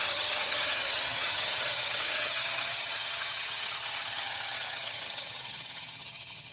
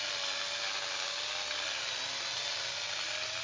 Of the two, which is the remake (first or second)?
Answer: first